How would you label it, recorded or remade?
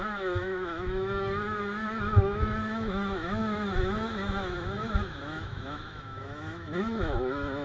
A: remade